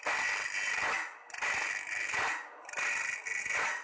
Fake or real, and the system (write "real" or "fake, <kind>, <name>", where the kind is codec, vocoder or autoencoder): real